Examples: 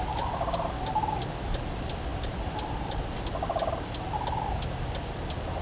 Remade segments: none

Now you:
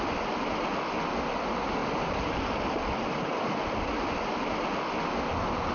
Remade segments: none

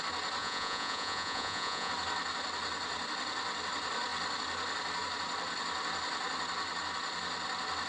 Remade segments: 0.4-1.9 (vocoder, Vocos)

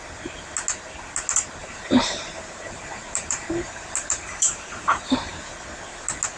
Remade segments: 1.6-5.4 (vocoder, BigVGAN v2)

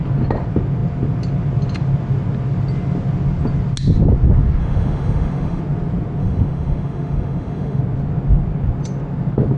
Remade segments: 4.6-5.6 (autoencoder, DAC-VAE); 6.2-7.8

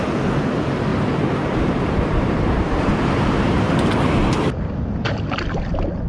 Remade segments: 0.9-3.4 (vocoder, BigVGAN v2)